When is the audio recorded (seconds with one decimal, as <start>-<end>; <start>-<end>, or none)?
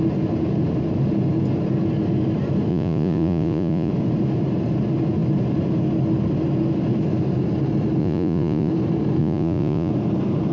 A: 0.0-2.7; 3.9-8.0; 8.7-9.2; 9.9-10.5